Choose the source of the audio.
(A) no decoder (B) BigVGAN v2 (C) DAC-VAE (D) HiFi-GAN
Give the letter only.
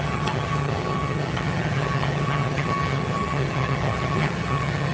D